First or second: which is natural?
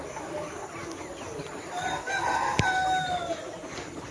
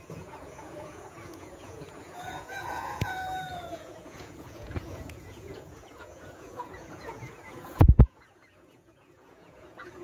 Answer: first